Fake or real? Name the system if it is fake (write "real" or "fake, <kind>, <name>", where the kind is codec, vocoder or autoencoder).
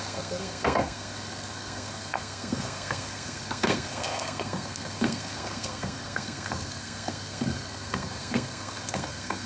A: fake, codec, SNAC